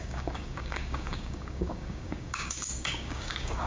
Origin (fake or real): fake